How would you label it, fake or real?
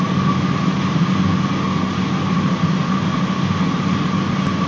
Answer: real